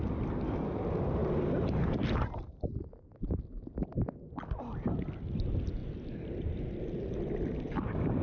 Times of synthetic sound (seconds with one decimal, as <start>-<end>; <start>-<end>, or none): none